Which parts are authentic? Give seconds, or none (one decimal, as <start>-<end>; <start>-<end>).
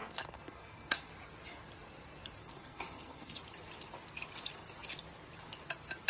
1.1-2.4; 3.4-6.1